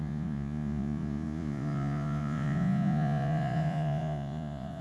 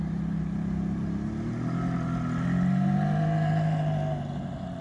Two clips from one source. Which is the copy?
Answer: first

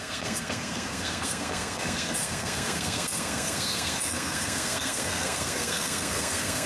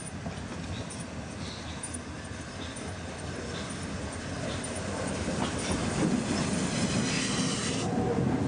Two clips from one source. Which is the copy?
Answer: first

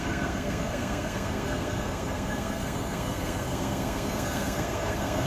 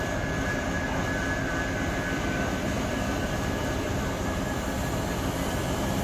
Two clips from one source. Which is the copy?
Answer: first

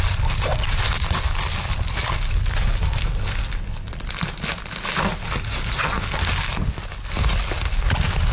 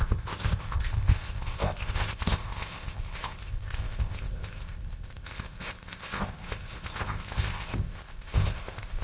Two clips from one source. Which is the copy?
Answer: second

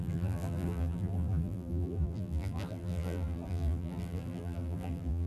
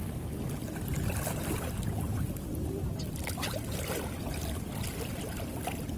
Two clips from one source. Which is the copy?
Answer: first